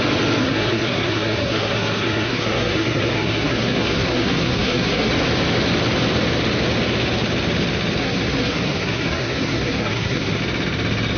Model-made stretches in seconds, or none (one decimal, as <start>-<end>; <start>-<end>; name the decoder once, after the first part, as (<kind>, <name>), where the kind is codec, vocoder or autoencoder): 0.4-5.1 (codec, SNAC); 8.0-10.4

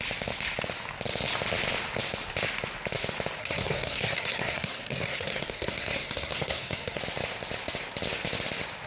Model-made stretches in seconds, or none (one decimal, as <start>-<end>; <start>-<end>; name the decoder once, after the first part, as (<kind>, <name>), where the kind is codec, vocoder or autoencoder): 3.4-7.0 (codec, SNAC)

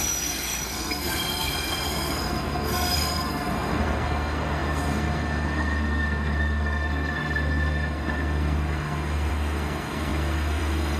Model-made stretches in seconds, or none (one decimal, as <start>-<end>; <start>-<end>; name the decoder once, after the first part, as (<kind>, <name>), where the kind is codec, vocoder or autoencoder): 0.0-11.0 (codec, SNAC)